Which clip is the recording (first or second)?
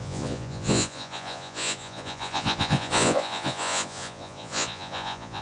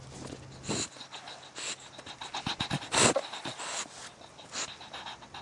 second